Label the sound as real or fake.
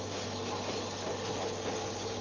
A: real